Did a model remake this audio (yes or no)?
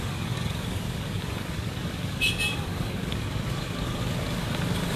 yes